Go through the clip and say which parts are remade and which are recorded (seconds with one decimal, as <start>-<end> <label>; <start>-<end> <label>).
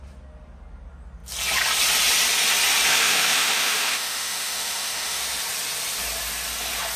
0.0-2.9 recorded; 2.9-5.2 remade; 5.2-7.0 recorded